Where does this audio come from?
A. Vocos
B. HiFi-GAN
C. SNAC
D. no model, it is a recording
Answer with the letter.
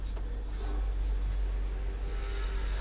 D